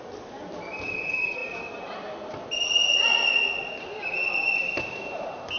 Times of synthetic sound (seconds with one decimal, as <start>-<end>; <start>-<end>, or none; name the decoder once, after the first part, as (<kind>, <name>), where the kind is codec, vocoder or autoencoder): none